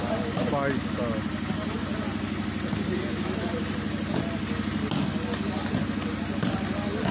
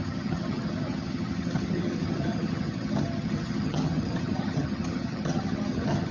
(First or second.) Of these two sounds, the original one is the first